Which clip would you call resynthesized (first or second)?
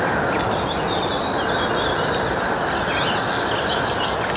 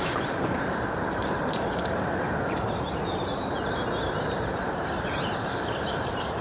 second